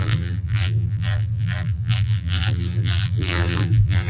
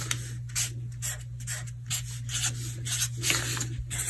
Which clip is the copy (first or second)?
first